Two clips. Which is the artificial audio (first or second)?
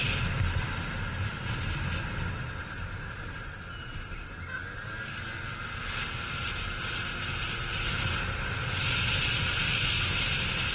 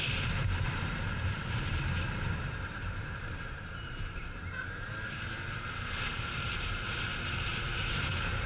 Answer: second